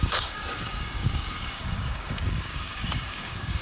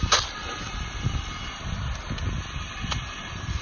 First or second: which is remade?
first